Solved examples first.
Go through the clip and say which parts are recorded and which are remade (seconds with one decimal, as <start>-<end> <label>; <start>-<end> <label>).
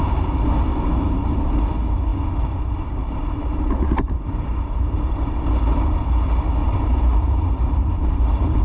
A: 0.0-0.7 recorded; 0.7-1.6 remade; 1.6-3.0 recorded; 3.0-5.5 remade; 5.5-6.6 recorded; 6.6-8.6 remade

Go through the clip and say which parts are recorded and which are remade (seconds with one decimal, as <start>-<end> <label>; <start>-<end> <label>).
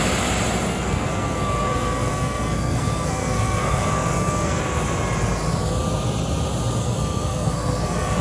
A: 0.0-0.7 recorded; 0.7-4.6 remade; 4.6-6.8 recorded; 6.8-8.2 remade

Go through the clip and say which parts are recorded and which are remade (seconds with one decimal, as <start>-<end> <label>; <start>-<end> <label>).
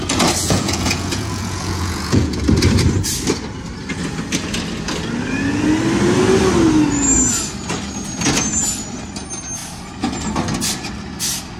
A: 0.0-0.4 recorded; 0.4-2.4 remade; 2.4-11.6 recorded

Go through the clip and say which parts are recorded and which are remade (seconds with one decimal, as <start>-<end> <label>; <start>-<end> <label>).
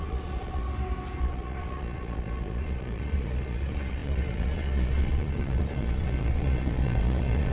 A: 0.0-0.6 remade; 0.6-1.2 recorded; 1.2-7.5 remade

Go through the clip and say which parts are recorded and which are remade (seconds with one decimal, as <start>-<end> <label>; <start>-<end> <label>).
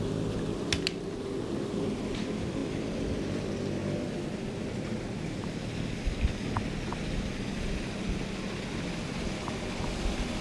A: 0.0-10.4 recorded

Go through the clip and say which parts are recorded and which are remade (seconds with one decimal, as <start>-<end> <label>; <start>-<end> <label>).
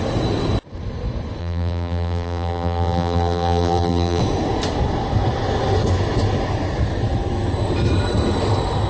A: 0.0-1.4 recorded; 1.4-4.2 remade; 4.2-8.9 recorded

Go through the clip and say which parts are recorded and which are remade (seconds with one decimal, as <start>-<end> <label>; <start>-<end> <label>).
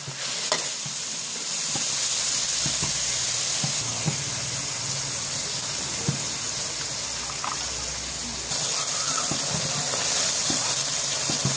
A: 0.0-11.6 recorded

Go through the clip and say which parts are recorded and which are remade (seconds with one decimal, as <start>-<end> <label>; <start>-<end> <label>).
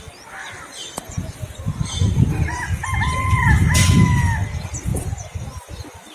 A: 0.0-0.4 recorded; 0.4-1.6 remade; 1.6-4.9 recorded; 4.9-5.4 remade; 5.4-6.1 recorded